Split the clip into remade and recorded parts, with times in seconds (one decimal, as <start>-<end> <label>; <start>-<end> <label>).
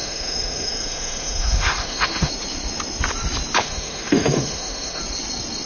0.0-2.3 remade; 2.3-3.6 recorded; 3.6-5.0 remade; 5.0-5.7 recorded